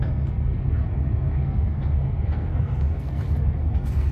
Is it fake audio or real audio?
fake